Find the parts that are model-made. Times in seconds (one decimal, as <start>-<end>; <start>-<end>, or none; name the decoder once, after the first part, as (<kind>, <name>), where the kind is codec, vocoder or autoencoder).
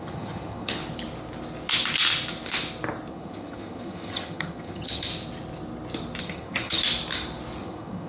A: 0.0-0.8 (vocoder, HiFi-GAN); 3.1-5.1; 6.2-6.8; 7.6-8.1